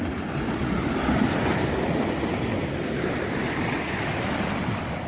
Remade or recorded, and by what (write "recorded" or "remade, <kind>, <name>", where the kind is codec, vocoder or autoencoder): recorded